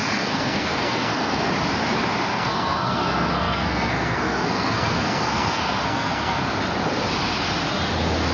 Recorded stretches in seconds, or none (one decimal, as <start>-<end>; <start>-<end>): 1.5-2.3; 6.4-8.3